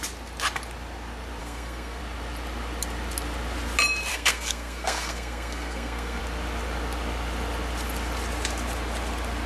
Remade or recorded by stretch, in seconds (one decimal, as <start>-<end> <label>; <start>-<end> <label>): 0.0-1.4 recorded; 1.4-2.0 remade; 2.0-4.1 recorded; 4.1-6.2 remade; 6.2-9.5 recorded